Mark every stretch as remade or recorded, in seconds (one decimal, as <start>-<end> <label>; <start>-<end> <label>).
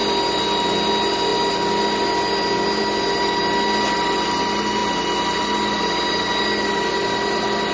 0.0-7.7 recorded